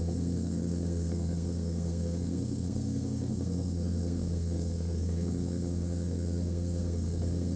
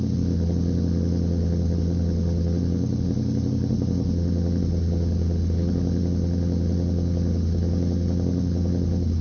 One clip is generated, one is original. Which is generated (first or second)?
first